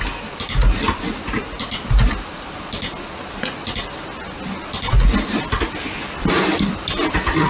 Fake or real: real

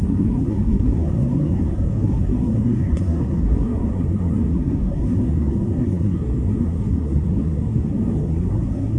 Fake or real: fake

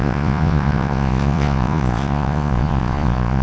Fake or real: fake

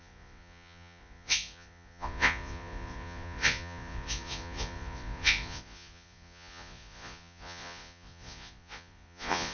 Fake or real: fake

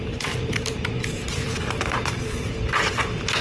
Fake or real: fake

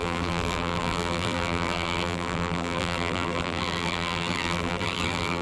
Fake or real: fake